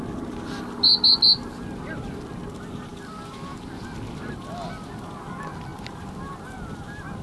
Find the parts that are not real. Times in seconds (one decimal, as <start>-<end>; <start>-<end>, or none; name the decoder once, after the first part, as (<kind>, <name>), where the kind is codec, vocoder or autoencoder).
none